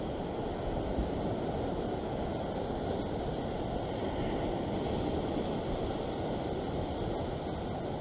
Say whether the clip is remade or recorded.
recorded